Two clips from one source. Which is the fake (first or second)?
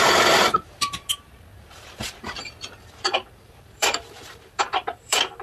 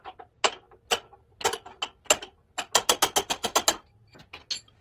first